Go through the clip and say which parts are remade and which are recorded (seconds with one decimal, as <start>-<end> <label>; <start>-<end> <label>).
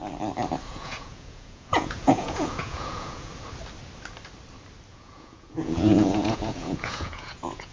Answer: 0.0-0.7 recorded; 0.7-3.3 remade; 3.3-4.9 recorded; 4.9-7.7 remade